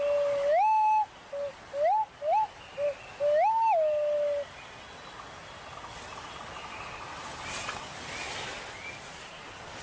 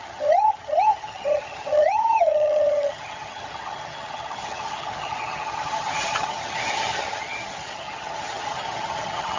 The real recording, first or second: first